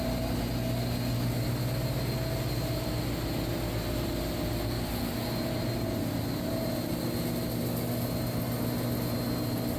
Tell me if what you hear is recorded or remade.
recorded